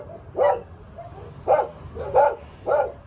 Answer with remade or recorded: recorded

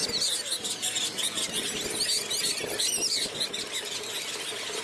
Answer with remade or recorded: recorded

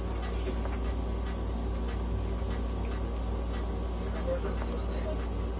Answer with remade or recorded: recorded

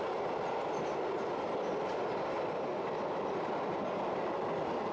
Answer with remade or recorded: recorded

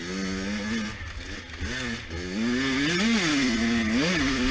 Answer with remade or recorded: recorded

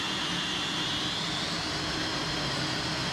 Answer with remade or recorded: recorded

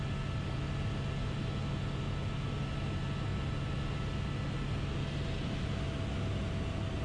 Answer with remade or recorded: recorded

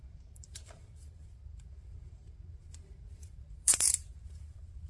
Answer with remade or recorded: remade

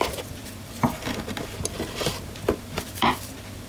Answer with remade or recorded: remade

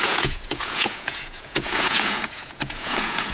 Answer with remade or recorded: remade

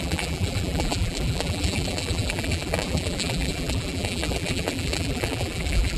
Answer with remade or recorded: remade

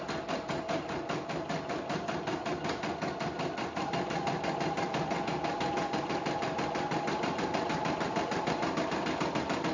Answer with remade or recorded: recorded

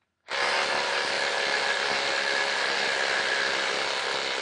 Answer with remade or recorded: recorded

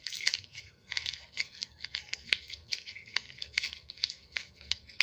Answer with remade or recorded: remade